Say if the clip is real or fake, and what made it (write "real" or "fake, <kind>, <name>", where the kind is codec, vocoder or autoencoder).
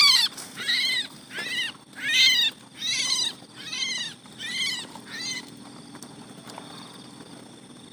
real